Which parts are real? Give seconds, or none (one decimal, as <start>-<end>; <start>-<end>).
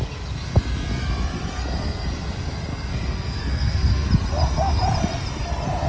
0.0-2.7; 4.1-5.9